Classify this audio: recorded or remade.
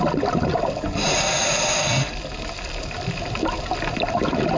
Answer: recorded